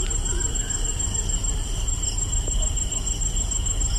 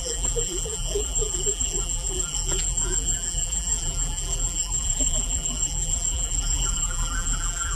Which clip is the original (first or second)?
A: first